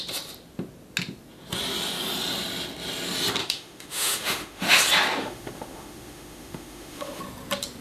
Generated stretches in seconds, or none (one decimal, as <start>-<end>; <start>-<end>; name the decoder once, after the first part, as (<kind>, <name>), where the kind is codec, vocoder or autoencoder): 3.4-4.8 (autoencoder, DAC-VAE); 5.2-7.2